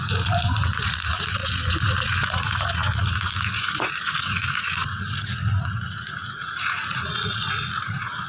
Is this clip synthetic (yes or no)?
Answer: yes